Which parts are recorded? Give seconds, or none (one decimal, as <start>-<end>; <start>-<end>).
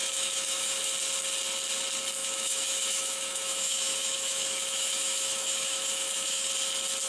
0.9-2.2; 6.5-7.1